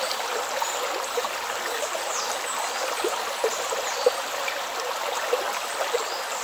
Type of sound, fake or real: real